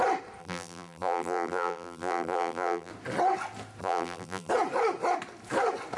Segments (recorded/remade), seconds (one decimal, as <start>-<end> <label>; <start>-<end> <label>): 0.0-0.4 recorded; 0.4-2.9 remade; 2.9-3.8 recorded; 3.8-4.5 remade; 4.5-6.0 recorded